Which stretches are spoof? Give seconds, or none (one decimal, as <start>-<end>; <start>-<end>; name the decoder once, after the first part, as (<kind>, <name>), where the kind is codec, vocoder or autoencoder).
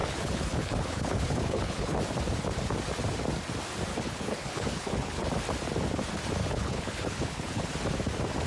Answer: 0.0-2.0 (codec, HILCodec); 3.9-5.3; 6.4-7.6